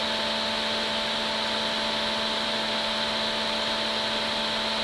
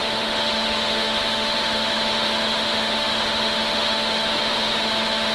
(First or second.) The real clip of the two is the first